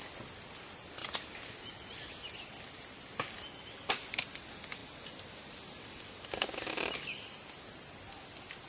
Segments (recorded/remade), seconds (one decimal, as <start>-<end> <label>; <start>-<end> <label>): 0.0-8.7 recorded